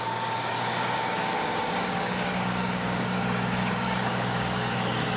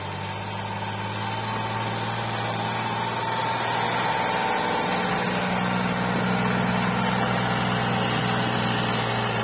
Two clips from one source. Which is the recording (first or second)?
second